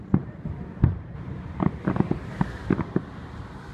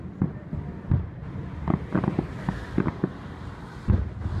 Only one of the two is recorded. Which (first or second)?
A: second